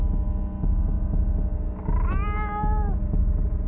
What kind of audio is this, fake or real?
real